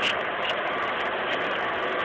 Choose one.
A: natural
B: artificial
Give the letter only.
A